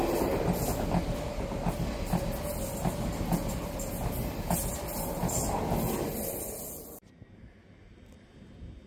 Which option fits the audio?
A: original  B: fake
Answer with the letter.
A